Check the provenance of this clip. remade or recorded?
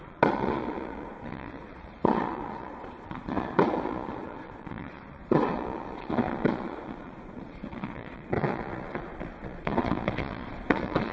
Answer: remade